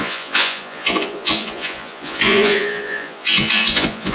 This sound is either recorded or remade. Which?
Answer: remade